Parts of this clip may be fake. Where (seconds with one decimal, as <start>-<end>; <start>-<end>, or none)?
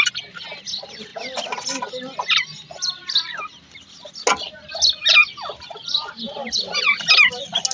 none